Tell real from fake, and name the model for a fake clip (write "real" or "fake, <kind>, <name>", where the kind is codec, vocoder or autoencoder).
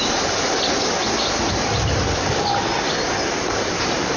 real